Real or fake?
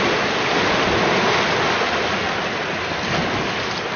real